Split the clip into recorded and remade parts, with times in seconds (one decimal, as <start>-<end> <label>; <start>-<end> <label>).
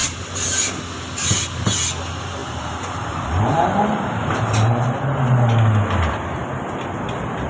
0.0-0.8 remade; 0.8-2.4 recorded; 2.4-5.0 remade; 5.0-7.5 recorded